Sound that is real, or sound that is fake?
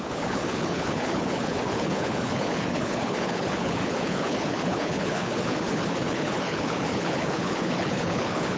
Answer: fake